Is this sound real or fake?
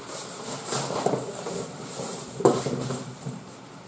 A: real